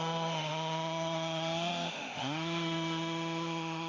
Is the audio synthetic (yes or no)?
yes